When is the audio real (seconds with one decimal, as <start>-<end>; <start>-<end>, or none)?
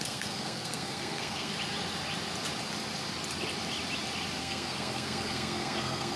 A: 1.5-4.4